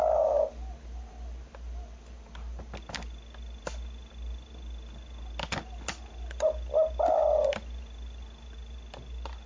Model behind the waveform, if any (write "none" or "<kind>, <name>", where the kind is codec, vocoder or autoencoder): none